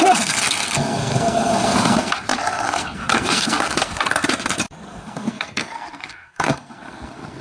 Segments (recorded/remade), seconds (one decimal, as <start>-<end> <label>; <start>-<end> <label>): 0.0-7.4 remade

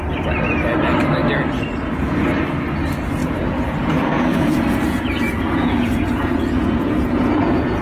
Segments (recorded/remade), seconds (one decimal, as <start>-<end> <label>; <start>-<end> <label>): 0.0-3.2 recorded; 3.2-7.8 remade

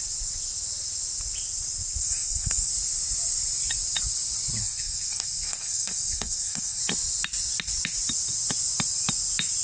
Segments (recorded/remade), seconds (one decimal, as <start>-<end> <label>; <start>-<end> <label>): 0.0-2.0 recorded; 2.0-2.7 remade; 2.7-4.6 recorded; 4.6-6.8 remade; 6.8-9.6 recorded

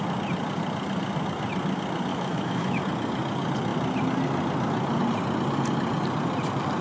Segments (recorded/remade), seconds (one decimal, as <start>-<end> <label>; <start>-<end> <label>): 0.0-2.1 recorded; 2.1-2.8 remade; 2.8-6.8 recorded

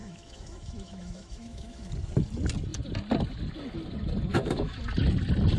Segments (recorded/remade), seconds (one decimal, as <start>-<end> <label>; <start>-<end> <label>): 0.0-1.9 remade; 1.9-4.3 recorded; 4.3-4.8 remade; 4.8-5.6 recorded